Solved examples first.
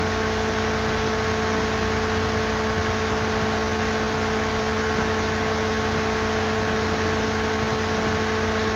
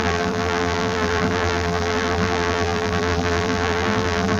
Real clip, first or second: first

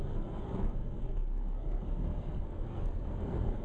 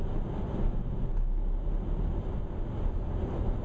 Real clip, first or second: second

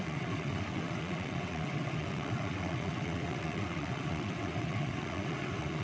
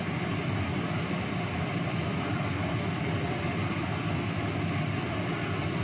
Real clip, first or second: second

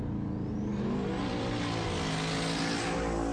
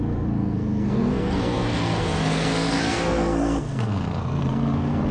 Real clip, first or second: first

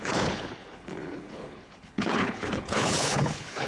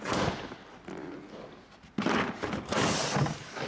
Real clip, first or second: second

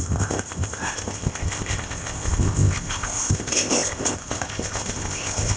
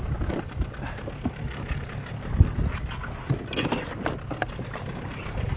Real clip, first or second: second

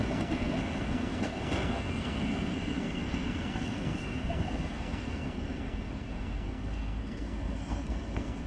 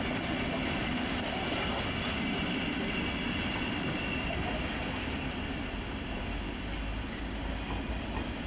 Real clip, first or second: second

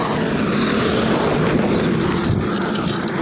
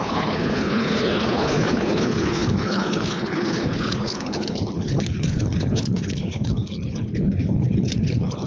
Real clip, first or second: first